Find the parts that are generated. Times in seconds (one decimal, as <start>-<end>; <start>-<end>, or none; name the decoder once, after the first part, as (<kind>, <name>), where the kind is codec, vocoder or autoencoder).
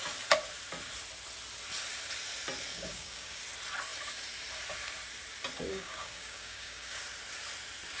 2.7-3.4 (codec, DAC); 5.7-7.0